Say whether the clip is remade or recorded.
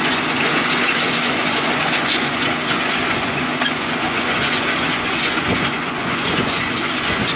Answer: remade